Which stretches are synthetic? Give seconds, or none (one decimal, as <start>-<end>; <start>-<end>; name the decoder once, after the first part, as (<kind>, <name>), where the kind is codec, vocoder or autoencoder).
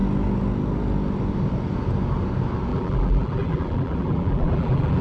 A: 2.7-5.0 (vocoder, BigVGAN v2)